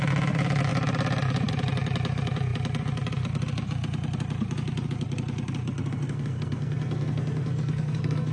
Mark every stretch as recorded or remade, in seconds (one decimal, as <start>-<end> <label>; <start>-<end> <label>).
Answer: 0.0-5.8 recorded; 5.8-8.3 remade